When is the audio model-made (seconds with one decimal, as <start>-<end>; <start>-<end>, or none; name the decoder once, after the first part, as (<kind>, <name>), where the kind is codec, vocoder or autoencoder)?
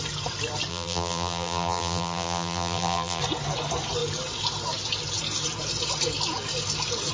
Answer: 0.7-3.2 (vocoder, BigVGAN v2)